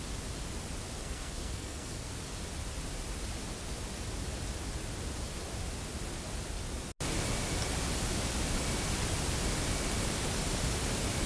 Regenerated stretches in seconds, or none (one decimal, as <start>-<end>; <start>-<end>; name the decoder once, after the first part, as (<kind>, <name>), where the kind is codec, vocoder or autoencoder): 1.0-2.1 (codec, SNAC)